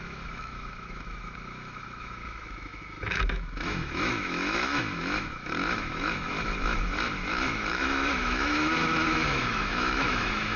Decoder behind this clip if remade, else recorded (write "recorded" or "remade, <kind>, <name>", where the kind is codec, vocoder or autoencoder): remade, autoencoder, DAC-VAE